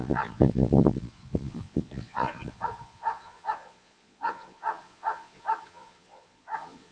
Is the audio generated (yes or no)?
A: yes